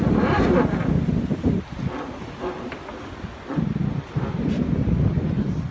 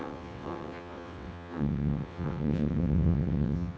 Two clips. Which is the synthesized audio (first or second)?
second